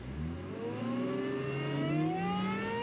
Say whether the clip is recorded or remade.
recorded